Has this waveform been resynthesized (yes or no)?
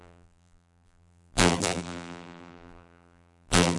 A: yes